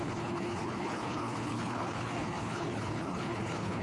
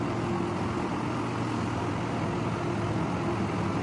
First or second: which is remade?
first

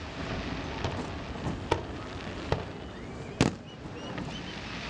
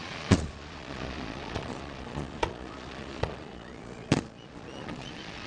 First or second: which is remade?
second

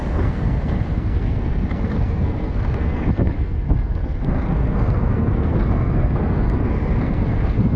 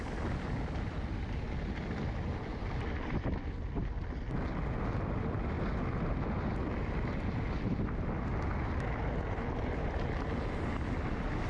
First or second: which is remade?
first